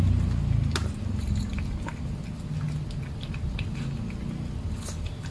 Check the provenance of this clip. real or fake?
real